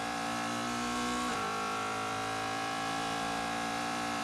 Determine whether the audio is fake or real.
fake